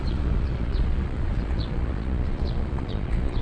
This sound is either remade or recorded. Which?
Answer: remade